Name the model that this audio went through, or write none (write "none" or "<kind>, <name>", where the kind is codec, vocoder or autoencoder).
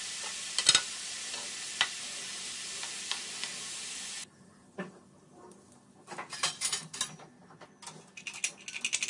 none